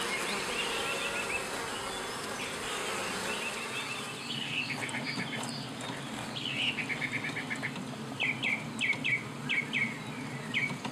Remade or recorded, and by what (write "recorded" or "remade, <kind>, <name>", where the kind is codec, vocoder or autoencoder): recorded